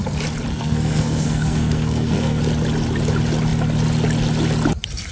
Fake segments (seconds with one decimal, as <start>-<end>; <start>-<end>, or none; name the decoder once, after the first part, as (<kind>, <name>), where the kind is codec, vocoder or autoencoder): 0.5-2.4 (codec, SNAC)